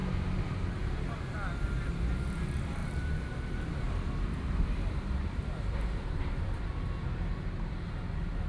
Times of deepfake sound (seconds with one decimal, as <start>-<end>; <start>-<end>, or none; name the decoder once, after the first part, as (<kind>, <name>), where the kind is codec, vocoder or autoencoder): 2.8-6.6 (vocoder, BigVGAN v2)